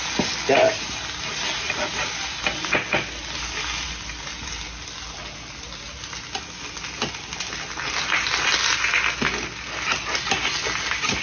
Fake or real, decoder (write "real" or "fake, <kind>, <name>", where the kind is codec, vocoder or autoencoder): real